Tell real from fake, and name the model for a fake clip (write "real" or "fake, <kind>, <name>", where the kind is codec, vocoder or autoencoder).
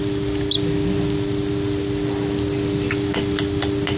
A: real